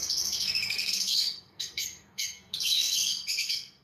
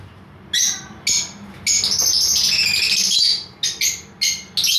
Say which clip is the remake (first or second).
first